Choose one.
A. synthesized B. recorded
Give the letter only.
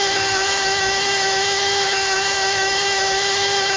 A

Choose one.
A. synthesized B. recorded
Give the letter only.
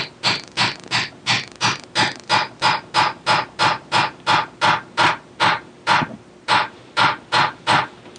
B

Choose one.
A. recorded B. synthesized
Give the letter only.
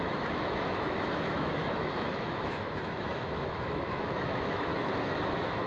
B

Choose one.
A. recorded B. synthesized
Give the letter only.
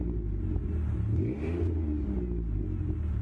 A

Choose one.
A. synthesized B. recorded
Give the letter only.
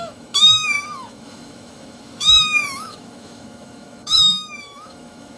A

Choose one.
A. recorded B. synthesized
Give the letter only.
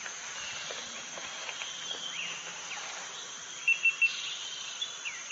A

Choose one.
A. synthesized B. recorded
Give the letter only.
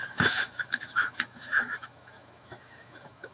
A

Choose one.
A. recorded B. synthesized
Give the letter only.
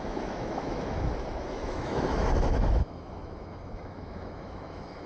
B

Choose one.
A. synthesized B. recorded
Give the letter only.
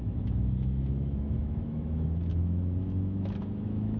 A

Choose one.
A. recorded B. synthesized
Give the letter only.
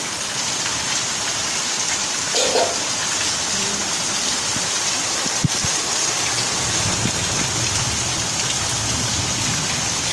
A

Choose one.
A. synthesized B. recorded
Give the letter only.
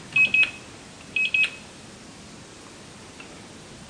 B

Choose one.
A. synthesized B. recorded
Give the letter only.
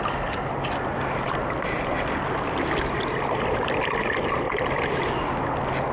B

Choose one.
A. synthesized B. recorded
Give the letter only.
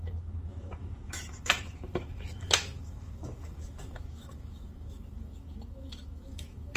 A